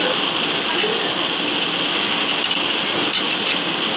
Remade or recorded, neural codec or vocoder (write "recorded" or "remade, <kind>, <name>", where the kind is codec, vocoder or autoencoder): recorded